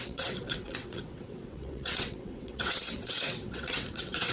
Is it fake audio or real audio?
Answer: fake